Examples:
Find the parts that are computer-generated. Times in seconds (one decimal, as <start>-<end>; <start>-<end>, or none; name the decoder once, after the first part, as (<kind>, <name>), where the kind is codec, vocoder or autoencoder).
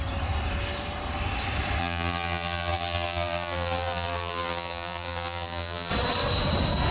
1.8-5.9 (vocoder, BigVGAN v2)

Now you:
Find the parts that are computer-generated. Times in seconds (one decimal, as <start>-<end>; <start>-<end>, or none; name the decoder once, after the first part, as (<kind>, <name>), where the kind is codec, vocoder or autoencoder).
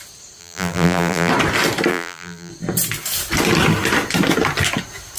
0.4-1.3 (vocoder, BigVGAN v2); 1.9-2.5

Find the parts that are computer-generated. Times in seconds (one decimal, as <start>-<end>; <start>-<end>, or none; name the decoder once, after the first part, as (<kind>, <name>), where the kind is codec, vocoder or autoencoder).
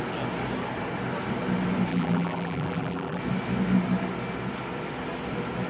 1.9-3.2 (vocoder, BigVGAN v2)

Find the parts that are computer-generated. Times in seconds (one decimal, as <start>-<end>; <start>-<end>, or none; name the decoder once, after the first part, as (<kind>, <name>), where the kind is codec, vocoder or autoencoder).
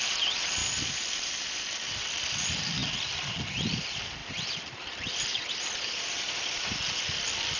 0.6-2.0 (vocoder, BigVGAN v2); 2.8-3.3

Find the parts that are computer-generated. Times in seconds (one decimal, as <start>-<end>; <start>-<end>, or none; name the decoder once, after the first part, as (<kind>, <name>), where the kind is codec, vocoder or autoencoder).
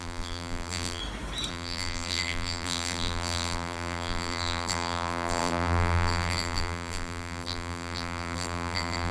0.0-1.0 (vocoder, BigVGAN v2); 1.5-9.1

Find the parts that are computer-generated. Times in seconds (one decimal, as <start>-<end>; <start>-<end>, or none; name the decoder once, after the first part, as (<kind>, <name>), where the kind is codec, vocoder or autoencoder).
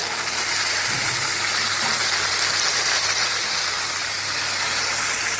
0.0-5.4 (vocoder, BigVGAN v2)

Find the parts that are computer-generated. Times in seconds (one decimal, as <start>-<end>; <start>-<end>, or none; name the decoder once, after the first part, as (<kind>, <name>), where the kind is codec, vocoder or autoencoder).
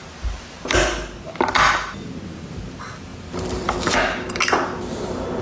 0.0-1.3 (vocoder, BigVGAN v2); 3.1-4.4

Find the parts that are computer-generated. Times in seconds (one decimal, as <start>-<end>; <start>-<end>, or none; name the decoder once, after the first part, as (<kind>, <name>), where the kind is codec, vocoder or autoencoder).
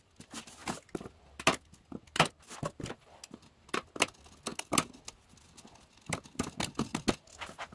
none